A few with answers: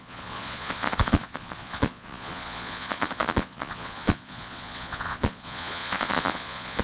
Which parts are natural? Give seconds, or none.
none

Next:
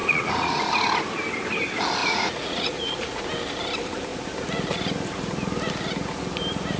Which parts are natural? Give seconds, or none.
0.6-2.0; 3.2-6.8

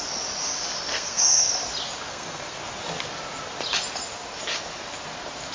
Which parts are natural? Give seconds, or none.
0.0-0.9; 1.5-2.1; 2.6-5.5

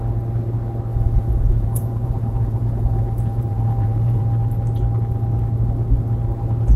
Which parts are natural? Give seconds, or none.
0.0-0.9; 4.2-6.8